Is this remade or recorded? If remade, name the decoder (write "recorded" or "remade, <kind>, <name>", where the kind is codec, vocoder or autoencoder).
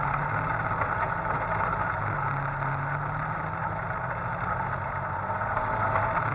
recorded